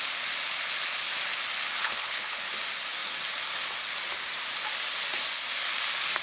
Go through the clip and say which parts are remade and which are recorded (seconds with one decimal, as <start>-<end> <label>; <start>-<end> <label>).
0.0-1.8 recorded; 1.8-2.5 remade; 2.5-6.2 recorded